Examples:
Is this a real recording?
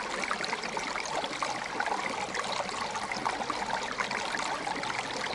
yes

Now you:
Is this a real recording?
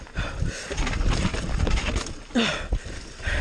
no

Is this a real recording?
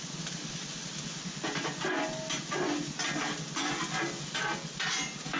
yes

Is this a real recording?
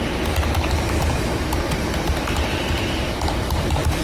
no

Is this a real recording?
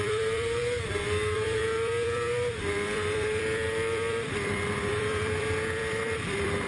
no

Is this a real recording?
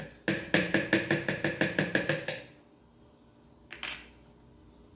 yes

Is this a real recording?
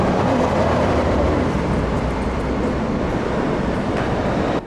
no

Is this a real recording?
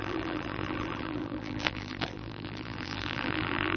no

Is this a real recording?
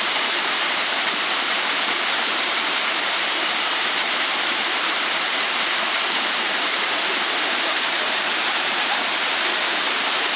no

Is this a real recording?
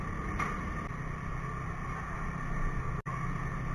yes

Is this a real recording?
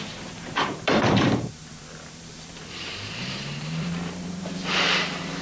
no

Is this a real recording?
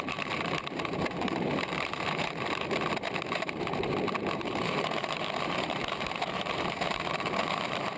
no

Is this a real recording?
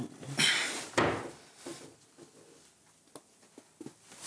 yes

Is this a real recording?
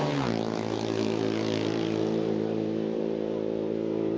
no